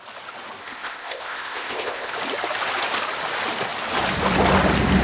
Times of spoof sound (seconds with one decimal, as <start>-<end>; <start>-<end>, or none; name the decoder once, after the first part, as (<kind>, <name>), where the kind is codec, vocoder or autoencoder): 0.6-2.1 (codec, ZipCodec)